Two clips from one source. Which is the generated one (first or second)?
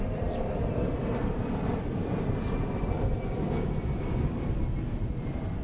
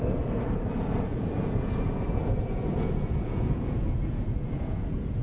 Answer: second